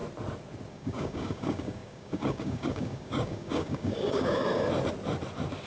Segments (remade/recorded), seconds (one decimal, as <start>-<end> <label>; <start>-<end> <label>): 0.0-0.7 recorded; 0.7-4.4 remade; 4.4-5.7 recorded